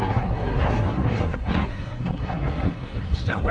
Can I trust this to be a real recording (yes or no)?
no